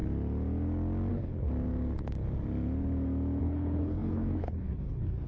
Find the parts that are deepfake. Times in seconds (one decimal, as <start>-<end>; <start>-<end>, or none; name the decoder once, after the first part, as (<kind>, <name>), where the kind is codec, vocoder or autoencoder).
1.1-1.5 (codec, HILCodec); 3.4-5.3

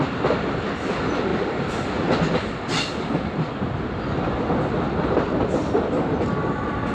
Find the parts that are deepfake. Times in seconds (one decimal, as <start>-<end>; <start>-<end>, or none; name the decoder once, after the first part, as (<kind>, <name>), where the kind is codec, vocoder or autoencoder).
none